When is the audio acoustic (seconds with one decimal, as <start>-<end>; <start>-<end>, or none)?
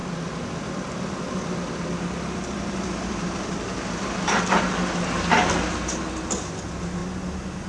4.6-7.7